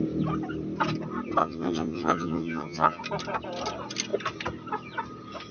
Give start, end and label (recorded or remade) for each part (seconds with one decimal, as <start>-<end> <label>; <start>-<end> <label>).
0.0-1.4 recorded; 1.4-3.0 remade; 3.0-5.5 recorded